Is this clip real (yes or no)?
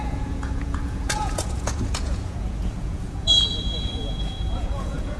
no